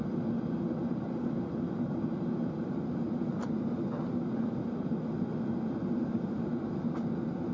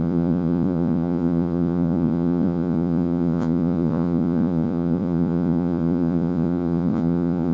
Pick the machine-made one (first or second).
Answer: second